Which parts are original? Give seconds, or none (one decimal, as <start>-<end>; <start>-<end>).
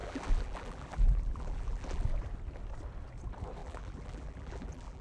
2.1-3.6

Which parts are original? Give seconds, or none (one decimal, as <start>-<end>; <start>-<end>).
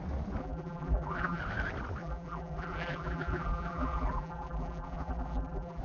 0.0-0.4; 1.4-2.0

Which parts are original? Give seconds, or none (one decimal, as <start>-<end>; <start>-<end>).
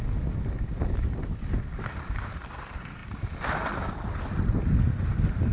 0.0-5.5